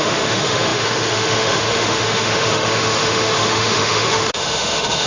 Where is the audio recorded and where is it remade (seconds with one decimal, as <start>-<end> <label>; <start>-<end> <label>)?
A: 0.0-5.1 remade